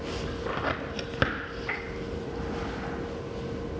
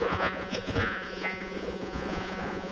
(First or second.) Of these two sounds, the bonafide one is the first